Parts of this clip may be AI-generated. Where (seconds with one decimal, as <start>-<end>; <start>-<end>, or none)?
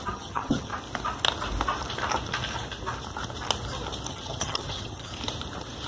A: 0.0-0.7; 4.1-5.1